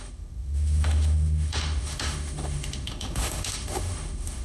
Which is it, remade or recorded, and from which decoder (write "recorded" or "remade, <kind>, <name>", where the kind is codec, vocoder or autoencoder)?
remade, autoencoder, DAC-VAE